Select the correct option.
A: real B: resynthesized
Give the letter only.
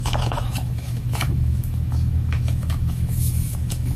B